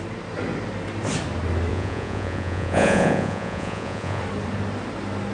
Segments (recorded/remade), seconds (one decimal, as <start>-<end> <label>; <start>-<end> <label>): 0.0-1.7 recorded; 1.7-4.2 remade; 4.2-5.3 recorded

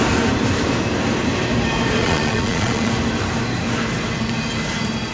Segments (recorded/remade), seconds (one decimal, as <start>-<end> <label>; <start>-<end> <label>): 0.0-2.0 recorded; 2.0-2.9 remade; 2.9-5.1 recorded

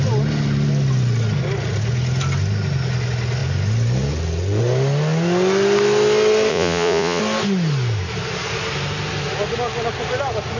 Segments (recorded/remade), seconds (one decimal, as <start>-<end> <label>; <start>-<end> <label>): 0.0-6.5 recorded; 6.5-7.2 remade; 7.2-10.6 recorded

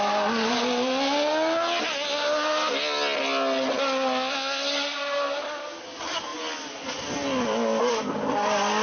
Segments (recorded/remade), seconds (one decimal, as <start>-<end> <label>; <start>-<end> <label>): 0.0-8.8 recorded

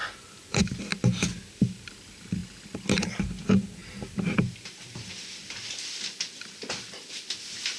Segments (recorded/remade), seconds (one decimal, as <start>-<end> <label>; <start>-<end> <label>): 0.0-0.6 remade; 0.6-7.8 recorded

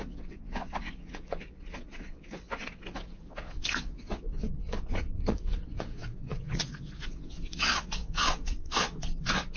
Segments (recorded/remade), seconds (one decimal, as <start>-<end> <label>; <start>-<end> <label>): 0.0-9.6 remade

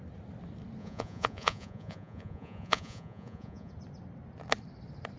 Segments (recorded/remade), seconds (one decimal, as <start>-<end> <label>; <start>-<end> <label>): 0.0-0.8 recorded; 0.8-3.7 remade; 3.7-5.2 recorded

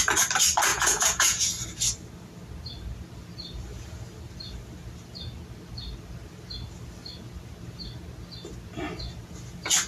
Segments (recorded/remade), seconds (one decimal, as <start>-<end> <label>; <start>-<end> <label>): 0.0-0.7 recorded; 0.7-1.5 remade; 1.5-9.9 recorded